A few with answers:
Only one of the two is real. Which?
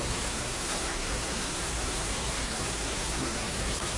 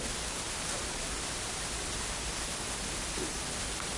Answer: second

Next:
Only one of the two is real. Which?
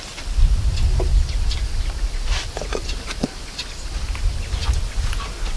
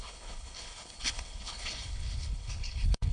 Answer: first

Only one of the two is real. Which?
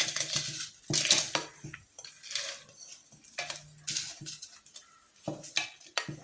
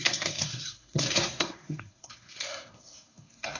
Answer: first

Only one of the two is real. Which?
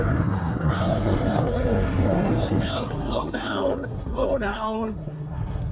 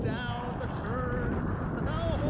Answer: second